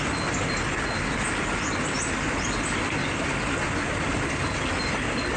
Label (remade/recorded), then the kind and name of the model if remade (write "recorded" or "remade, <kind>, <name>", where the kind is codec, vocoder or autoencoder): recorded